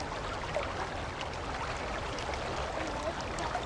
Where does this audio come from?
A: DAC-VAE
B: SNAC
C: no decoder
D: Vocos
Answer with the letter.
C